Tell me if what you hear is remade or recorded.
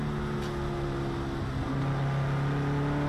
recorded